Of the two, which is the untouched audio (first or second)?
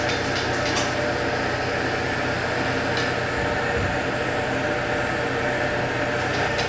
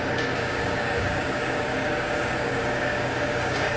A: first